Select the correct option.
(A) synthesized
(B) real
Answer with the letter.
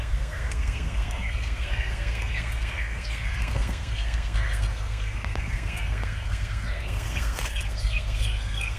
A